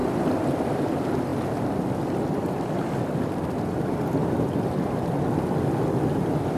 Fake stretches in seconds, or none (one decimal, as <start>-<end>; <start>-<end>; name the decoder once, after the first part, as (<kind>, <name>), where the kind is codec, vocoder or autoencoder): none